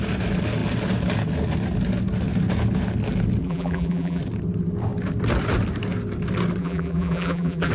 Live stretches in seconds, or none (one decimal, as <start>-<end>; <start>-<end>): 0.0-3.4; 4.2-6.6

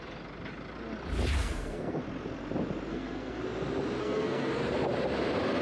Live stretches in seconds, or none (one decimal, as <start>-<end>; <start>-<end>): 0.0-1.4; 2.0-2.9; 3.4-4.0; 4.5-5.6

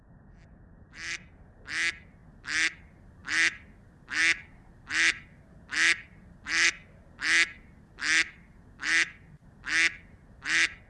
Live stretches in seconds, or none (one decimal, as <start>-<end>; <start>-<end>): 0.0-10.9

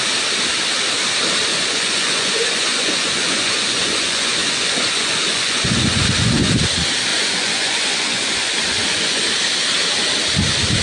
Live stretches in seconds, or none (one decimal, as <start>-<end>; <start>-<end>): 0.0-1.5; 6.5-7.1; 9.2-10.8

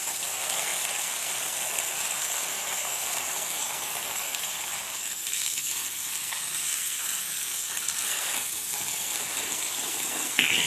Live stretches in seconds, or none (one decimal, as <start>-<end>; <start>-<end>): none